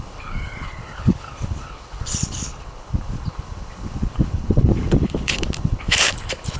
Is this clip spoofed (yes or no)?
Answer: yes